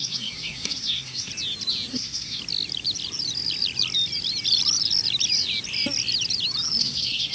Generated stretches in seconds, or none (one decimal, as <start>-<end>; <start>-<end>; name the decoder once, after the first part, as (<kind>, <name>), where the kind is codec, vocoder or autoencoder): 0.0-1.3 (codec, SNAC); 1.9-2.4; 6.8-7.3